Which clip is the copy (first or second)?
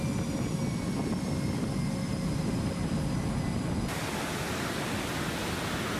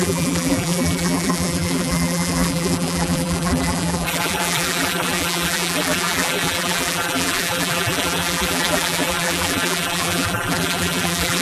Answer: second